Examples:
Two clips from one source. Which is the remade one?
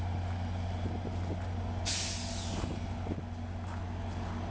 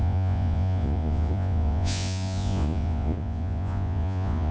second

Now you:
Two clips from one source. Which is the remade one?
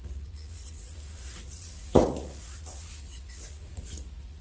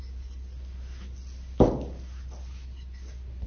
first